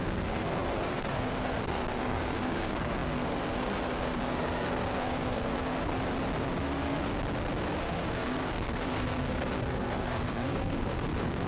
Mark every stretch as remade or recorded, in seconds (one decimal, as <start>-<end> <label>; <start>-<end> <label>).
0.0-5.9 remade; 5.9-6.4 recorded; 6.4-7.1 remade; 7.1-7.8 recorded; 7.8-11.5 remade